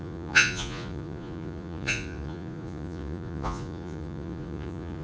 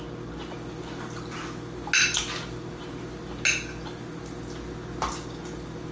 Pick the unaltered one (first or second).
second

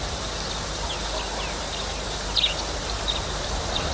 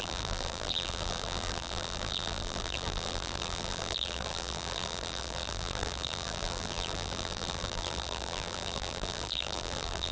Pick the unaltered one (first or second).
first